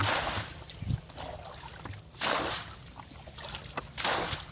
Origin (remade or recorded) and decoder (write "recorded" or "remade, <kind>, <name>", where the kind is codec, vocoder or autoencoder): recorded